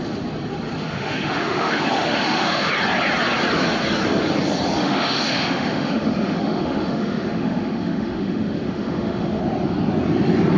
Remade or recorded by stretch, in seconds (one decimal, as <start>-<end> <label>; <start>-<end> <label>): 0.0-0.8 recorded; 0.8-2.7 remade; 2.7-4.8 recorded; 4.8-9.4 remade; 9.4-10.6 recorded